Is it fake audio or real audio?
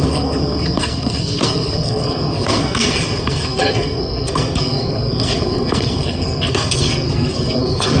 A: fake